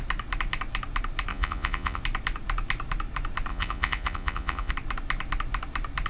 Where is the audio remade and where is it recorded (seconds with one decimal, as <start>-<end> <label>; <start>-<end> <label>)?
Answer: 0.0-1.3 recorded; 1.3-2.0 remade; 2.0-3.5 recorded; 3.5-4.7 remade; 4.7-6.1 recorded